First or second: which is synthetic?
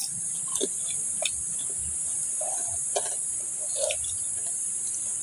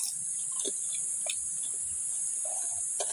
second